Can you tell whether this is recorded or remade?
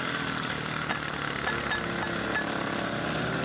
recorded